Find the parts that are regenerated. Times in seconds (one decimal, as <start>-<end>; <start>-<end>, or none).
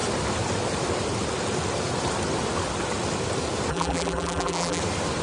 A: 3.7-4.8